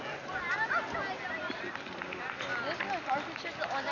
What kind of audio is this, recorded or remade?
recorded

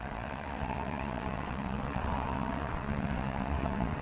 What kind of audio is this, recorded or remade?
remade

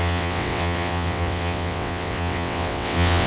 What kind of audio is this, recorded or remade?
remade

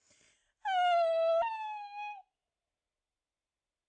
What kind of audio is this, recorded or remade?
recorded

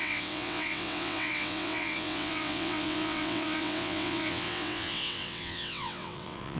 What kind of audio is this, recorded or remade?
remade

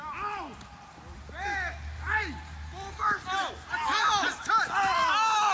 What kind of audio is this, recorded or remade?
recorded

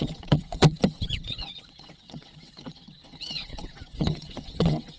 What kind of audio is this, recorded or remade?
remade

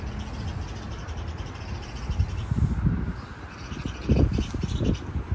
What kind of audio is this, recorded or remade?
recorded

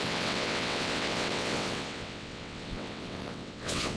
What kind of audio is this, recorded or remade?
remade